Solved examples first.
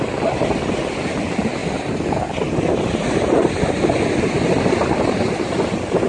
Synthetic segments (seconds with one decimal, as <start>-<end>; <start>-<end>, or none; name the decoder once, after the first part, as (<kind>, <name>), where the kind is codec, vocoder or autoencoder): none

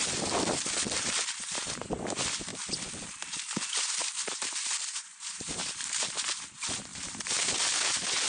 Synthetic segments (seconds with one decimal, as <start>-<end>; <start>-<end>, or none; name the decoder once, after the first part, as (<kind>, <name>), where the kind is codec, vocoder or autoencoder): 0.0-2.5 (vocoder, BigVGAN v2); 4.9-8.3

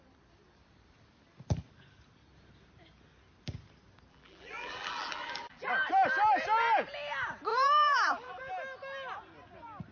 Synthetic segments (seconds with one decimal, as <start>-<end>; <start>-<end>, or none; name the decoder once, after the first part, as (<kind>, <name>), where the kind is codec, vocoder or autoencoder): 4.1-5.7 (vocoder, BigVGAN v2); 7.5-8.5

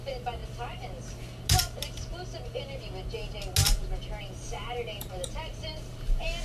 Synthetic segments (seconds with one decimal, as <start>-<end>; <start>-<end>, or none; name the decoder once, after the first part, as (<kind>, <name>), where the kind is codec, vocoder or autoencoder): 0.0-0.4 (vocoder, BigVGAN v2); 4.2-6.4

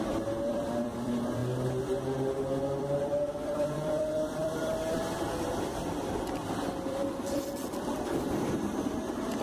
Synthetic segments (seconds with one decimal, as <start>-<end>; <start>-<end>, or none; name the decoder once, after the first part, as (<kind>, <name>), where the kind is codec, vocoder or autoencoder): 0.0-1.4 (vocoder, BigVGAN v2); 2.6-9.4